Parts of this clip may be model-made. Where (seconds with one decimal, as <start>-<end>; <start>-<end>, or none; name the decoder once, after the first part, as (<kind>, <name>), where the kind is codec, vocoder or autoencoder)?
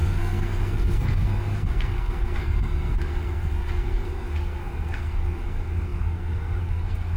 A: 0.0-7.2 (codec, SNAC)